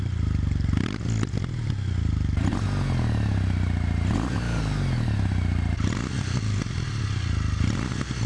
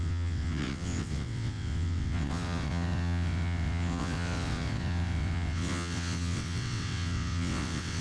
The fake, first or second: second